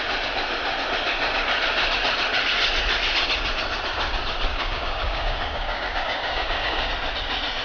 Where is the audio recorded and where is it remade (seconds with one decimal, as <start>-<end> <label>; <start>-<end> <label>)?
0.0-4.5 recorded; 4.5-6.9 remade; 6.9-7.6 recorded